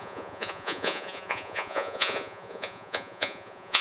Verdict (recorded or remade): remade